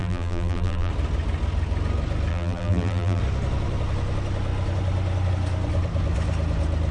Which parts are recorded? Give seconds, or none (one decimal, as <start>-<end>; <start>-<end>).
0.9-2.3; 3.2-6.9

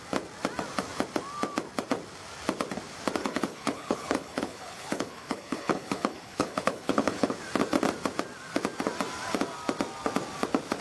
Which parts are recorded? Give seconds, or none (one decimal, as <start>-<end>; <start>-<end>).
0.0-3.2; 7.3-10.8

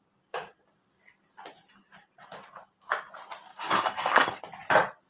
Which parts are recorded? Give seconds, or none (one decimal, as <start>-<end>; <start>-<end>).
0.0-3.5; 4.4-5.1